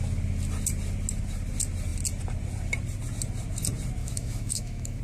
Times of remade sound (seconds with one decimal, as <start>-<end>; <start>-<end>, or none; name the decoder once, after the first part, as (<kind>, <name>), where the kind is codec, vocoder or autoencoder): 4.0-5.0 (autoencoder, DAC-VAE)